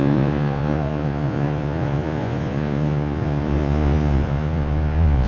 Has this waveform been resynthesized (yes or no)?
yes